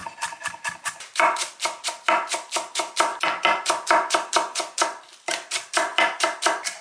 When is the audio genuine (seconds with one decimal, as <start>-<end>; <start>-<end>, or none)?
0.0-1.9; 3.1-5.2